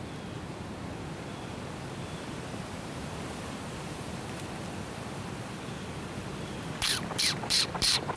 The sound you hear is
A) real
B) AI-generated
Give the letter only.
B